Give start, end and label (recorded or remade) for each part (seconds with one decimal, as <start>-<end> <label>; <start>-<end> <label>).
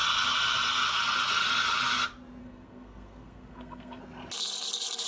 0.0-2.4 recorded; 2.4-4.0 remade; 4.0-5.1 recorded